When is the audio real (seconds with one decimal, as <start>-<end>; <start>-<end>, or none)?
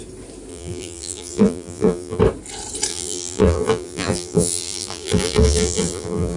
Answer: 0.0-0.5; 2.2-2.9